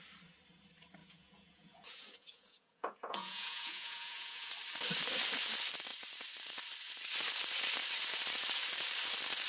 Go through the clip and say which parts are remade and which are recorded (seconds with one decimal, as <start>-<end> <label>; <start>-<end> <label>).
0.0-1.0 recorded; 1.0-4.5 remade; 4.5-9.5 recorded